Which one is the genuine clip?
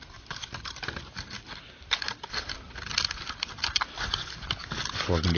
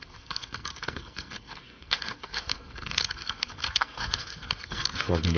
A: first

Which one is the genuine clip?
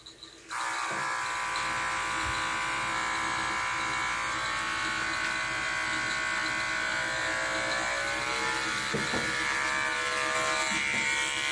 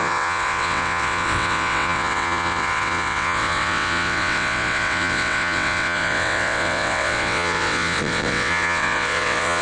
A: first